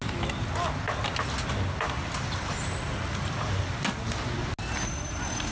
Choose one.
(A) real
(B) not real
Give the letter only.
A